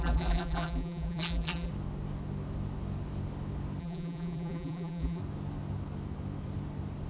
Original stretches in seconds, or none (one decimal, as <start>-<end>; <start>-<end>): 1.7-3.8; 5.2-7.1